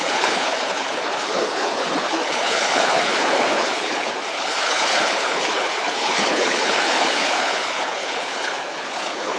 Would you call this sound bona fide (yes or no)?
no